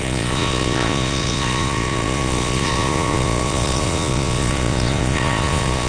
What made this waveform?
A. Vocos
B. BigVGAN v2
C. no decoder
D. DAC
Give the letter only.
A